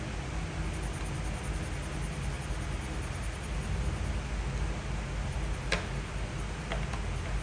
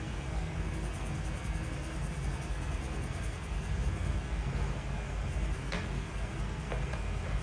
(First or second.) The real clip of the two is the first